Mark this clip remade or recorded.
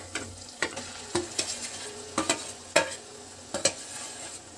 remade